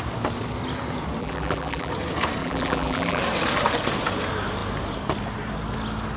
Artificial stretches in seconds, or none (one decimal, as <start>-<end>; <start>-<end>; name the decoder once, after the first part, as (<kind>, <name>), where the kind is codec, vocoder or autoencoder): 1.2-1.9 (vocoder, BigVGAN v2); 2.4-3.2